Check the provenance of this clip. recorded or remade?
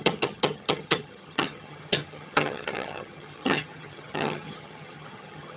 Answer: remade